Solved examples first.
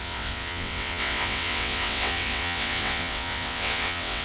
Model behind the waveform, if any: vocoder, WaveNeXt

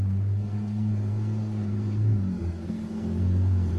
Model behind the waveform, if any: codec, SNAC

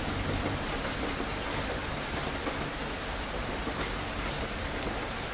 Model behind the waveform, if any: none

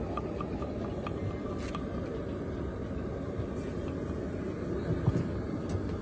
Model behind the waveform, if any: none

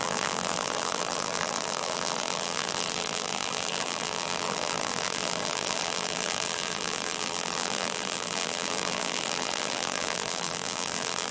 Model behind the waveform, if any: vocoder, BigVGAN v2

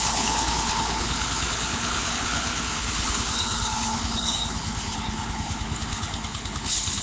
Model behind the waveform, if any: codec, HILCodec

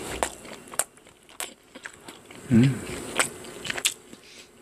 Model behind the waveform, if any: none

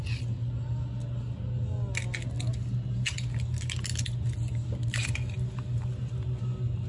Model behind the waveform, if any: none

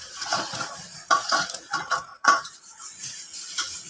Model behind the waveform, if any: vocoder, Vocos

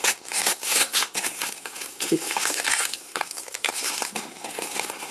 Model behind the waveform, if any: codec, SNAC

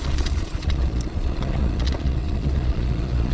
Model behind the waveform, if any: vocoder, Vocos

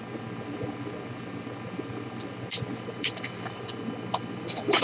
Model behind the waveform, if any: none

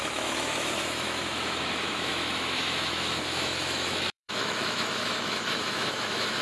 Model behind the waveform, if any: autoencoder, DAC-VAE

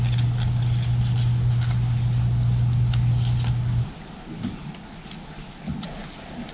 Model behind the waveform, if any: none